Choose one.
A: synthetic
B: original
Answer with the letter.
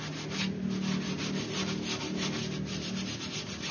B